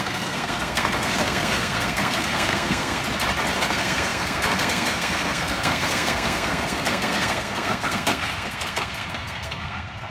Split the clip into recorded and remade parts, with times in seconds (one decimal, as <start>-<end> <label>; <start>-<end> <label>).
0.0-3.0 remade; 3.0-3.6 recorded; 3.6-10.1 remade